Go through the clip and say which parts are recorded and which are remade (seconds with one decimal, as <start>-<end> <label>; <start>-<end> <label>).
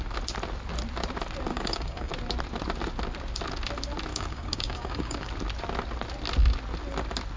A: 0.0-1.5 recorded; 1.5-2.1 remade; 2.1-4.1 recorded; 4.1-5.3 remade; 5.3-7.4 recorded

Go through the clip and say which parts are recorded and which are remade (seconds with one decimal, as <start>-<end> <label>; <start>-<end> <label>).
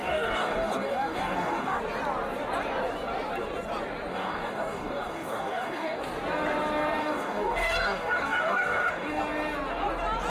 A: 0.0-1.8 remade; 1.8-4.1 recorded; 4.1-6.0 remade; 6.0-7.0 recorded; 7.0-9.2 remade; 9.2-10.3 recorded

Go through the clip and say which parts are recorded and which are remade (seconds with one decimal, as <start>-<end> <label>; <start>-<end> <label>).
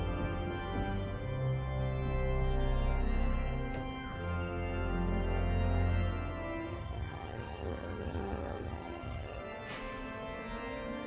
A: 0.0-6.7 recorded; 6.7-9.4 remade; 9.4-11.1 recorded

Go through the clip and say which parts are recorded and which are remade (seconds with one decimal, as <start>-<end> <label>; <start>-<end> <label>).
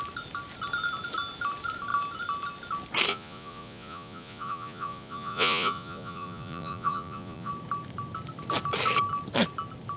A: 0.0-3.1 recorded; 3.1-7.5 remade; 7.5-10.0 recorded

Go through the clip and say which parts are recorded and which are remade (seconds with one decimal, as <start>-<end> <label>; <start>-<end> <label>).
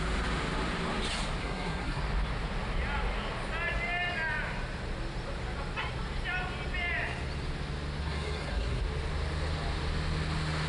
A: 0.0-1.4 recorded; 1.4-2.0 remade; 2.0-8.0 recorded; 8.0-8.8 remade; 8.8-10.7 recorded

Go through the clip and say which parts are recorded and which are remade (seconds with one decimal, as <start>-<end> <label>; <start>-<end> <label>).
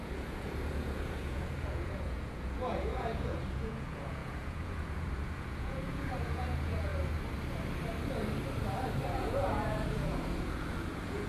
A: 0.0-6.9 remade; 6.9-9.1 recorded; 9.1-11.3 remade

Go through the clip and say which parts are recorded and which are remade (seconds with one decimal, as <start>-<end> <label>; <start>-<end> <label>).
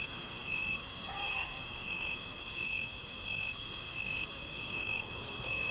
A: 0.0-5.7 remade